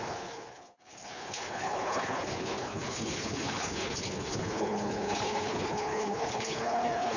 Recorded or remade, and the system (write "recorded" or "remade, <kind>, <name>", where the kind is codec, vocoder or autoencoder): remade, codec, HILCodec